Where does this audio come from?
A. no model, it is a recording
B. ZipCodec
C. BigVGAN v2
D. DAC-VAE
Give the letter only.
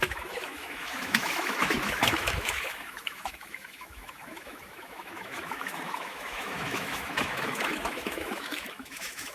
D